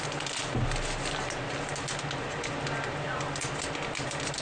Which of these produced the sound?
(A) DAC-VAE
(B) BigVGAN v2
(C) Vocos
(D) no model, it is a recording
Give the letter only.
D